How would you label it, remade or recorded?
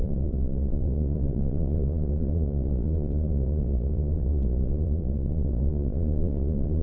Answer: remade